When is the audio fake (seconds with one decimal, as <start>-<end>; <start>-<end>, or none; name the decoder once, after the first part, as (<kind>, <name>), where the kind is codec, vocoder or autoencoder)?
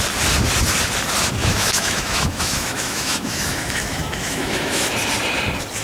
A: 1.4-4.9 (autoencoder, DAC-VAE)